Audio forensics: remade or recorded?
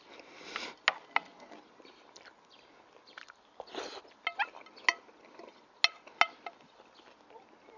recorded